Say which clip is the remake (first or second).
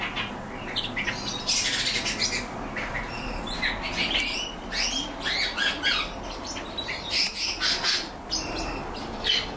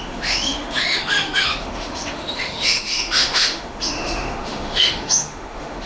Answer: second